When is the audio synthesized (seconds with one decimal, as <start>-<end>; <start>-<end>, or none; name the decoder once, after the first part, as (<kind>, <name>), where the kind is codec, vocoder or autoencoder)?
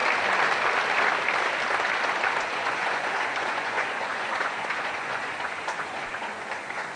2.3-7.0 (vocoder, Vocos)